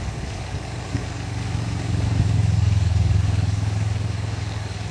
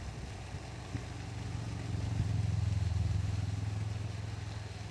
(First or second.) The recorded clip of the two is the second